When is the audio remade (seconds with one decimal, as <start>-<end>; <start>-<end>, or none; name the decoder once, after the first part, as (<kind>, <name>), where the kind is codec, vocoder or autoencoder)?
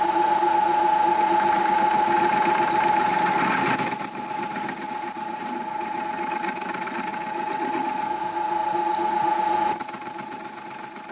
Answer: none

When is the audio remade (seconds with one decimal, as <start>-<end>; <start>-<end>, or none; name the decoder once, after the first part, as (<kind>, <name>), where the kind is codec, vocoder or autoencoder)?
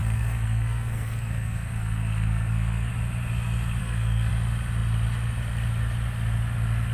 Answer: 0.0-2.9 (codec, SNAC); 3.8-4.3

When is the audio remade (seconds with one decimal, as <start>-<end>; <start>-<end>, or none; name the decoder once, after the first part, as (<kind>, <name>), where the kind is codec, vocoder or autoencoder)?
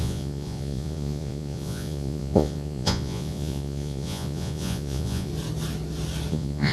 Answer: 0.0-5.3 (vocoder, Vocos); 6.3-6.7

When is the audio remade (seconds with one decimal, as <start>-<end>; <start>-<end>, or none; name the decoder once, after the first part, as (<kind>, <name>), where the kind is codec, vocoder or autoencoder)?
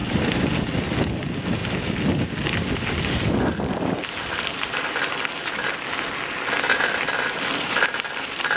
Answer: 0.0-1.6 (vocoder, BigVGAN v2); 6.8-8.6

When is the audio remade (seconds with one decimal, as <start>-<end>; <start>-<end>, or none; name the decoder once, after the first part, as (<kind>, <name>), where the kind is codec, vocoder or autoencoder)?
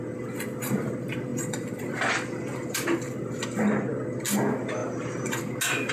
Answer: 1.3-3.3 (vocoder, BigVGAN v2)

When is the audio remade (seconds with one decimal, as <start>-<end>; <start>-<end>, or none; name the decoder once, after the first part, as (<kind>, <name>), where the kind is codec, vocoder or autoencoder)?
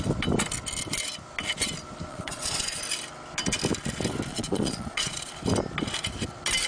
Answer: 2.1-2.8 (vocoder, Vocos); 4.3-5.3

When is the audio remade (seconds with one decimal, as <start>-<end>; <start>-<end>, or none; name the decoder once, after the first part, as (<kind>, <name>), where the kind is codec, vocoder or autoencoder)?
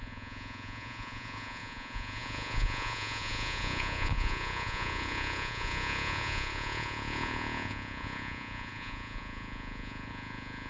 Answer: 0.0-10.7 (vocoder, Vocos)